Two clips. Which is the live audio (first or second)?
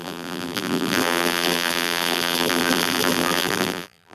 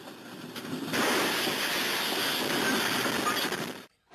second